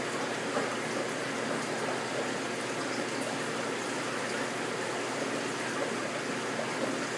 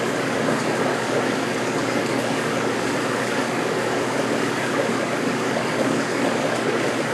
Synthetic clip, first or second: second